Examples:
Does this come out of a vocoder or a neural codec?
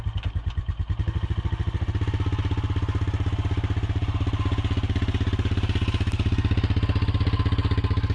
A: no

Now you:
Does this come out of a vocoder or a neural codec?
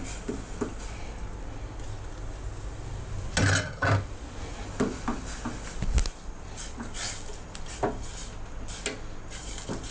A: no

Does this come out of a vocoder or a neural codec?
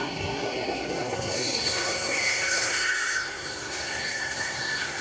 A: yes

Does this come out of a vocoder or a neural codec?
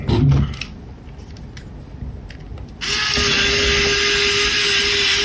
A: no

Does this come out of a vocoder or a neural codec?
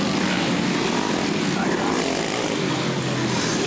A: no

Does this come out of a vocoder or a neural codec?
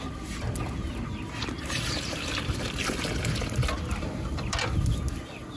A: no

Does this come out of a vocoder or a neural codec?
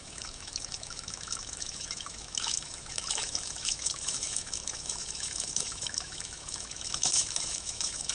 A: yes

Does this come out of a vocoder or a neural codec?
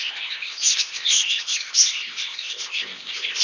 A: yes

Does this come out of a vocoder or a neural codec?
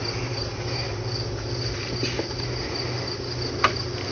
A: no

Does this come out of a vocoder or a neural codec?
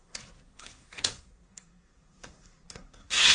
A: yes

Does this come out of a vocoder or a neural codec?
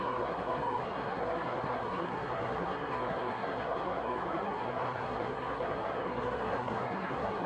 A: yes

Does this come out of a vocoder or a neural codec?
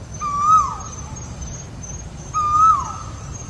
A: no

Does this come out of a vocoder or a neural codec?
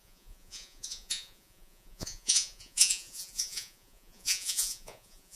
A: yes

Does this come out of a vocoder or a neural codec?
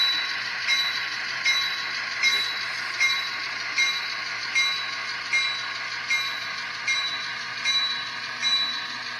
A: no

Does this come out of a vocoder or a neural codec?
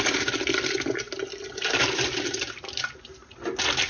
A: no